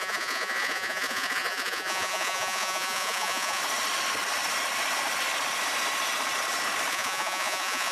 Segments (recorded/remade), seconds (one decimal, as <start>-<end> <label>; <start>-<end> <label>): 0.0-3.6 remade; 3.6-6.9 recorded; 6.9-7.9 remade

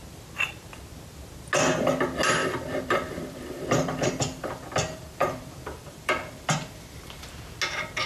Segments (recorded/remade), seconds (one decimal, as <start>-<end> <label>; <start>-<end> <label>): 0.0-2.4 recorded; 2.4-7.3 remade; 7.3-8.1 recorded

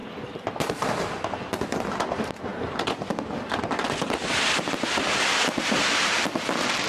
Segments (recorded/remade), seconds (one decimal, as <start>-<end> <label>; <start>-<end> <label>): 0.0-6.9 recorded

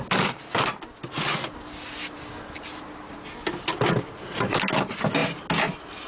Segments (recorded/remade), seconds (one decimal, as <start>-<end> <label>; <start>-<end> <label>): 0.0-6.1 recorded